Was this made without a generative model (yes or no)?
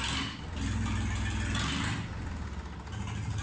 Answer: yes